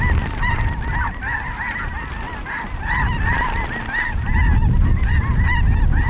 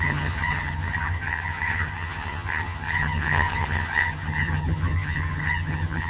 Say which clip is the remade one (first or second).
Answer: second